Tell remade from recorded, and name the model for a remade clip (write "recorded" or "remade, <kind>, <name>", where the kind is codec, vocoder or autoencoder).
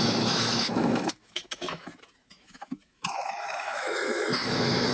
remade, autoencoder, DAC-VAE